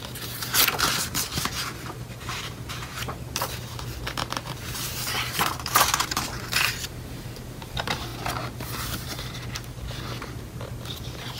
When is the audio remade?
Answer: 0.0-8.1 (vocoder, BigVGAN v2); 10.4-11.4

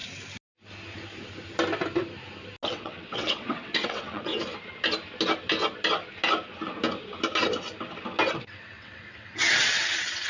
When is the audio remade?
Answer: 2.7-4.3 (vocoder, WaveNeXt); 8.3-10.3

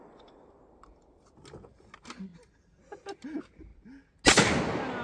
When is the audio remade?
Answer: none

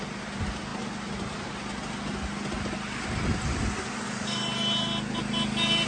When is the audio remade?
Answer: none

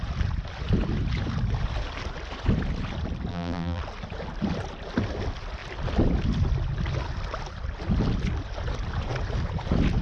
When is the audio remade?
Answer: 3.3-3.8 (vocoder, BigVGAN v2)